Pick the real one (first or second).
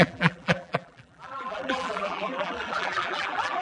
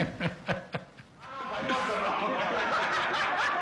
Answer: second